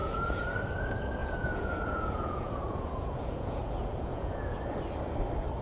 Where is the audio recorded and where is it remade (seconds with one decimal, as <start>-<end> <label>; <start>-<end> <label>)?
0.0-0.5 remade; 0.5-1.2 recorded; 1.2-4.6 remade; 4.6-5.6 recorded